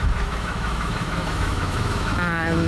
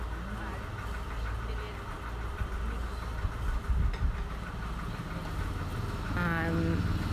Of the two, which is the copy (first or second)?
first